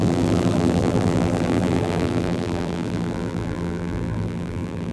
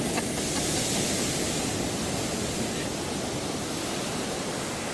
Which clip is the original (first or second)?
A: second